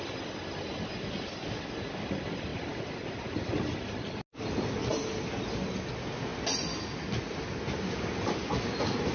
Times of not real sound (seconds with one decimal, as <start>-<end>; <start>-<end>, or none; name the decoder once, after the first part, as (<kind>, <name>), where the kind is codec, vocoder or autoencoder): none